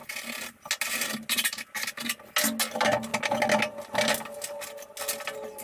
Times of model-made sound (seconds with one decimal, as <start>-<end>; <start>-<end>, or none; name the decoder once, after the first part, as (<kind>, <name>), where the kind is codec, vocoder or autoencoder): none